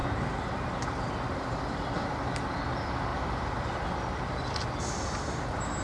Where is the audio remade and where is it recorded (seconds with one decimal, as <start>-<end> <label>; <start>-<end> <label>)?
0.0-5.8 recorded